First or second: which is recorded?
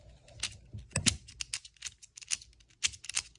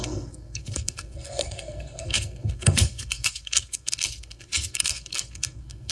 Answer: first